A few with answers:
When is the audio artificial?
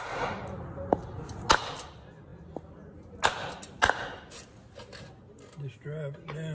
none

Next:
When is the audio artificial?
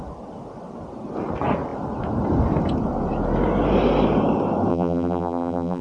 4.7-5.8 (vocoder, BigVGAN v2)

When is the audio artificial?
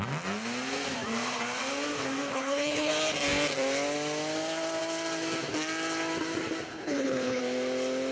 2.3-2.9 (codec, HILCodec); 6.7-7.4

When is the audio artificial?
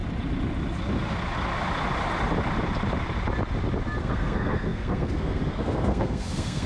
4.0-6.7 (codec, SNAC)